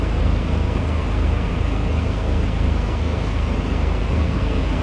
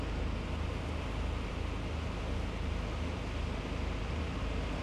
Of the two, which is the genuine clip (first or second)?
second